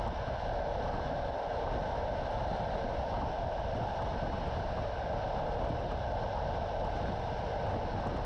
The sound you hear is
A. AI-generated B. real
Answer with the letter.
B